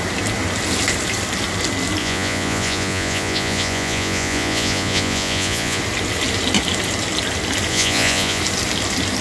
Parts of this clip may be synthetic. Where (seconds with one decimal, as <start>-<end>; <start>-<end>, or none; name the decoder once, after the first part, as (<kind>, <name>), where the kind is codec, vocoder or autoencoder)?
2.0-5.8 (vocoder, Vocos); 7.7-8.4